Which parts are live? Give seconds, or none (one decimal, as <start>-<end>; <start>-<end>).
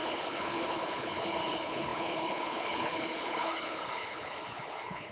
none